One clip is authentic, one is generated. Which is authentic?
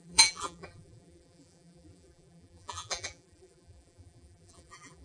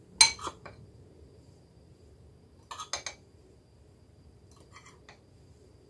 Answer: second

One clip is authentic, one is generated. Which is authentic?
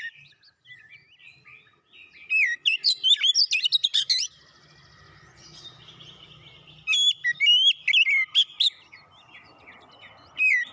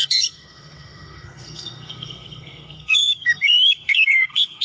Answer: first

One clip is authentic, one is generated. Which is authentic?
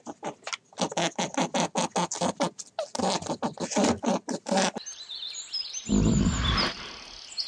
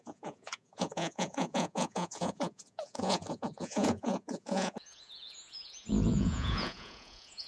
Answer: first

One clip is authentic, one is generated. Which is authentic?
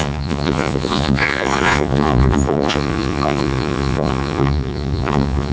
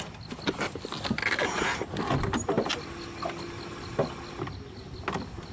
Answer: second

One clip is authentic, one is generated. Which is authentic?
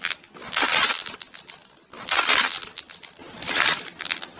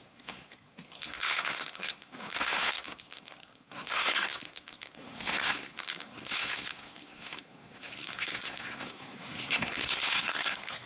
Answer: first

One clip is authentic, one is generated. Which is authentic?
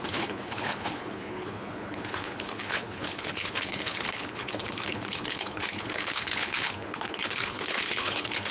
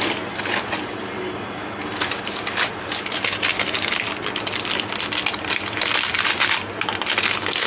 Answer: second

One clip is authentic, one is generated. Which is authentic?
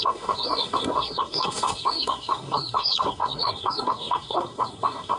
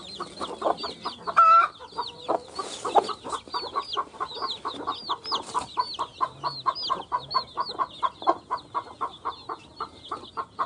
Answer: second